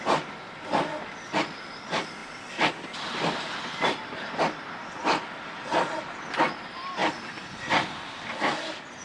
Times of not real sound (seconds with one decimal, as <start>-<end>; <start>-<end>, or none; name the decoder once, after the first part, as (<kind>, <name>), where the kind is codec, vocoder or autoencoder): 2.2-2.7 (vocoder, BigVGAN v2)